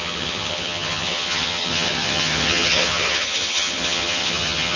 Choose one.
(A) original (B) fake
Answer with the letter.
B